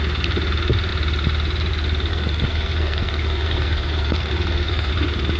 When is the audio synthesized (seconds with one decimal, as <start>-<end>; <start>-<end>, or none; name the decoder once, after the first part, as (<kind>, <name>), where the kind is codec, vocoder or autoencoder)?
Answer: 2.1-4.9 (codec, SNAC)